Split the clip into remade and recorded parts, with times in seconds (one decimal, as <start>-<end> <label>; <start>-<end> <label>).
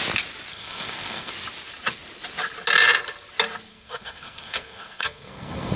0.0-0.5 recorded; 0.5-1.3 remade; 1.3-3.7 recorded; 3.7-5.8 remade